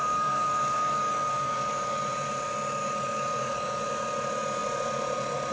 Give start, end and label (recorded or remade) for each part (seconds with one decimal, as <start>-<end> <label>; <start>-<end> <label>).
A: 0.0-2.0 remade; 2.0-2.8 recorded; 2.8-3.8 remade; 3.8-5.5 recorded